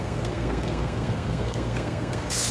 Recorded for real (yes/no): no